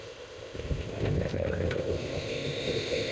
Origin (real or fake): fake